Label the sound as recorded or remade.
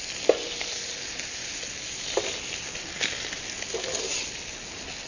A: recorded